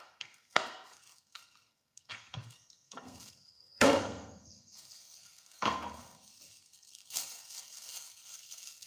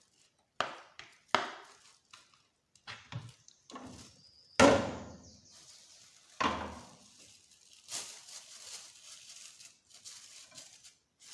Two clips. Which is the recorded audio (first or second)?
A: second